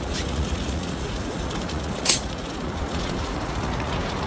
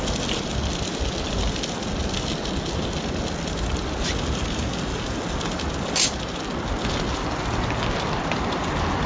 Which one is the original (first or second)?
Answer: second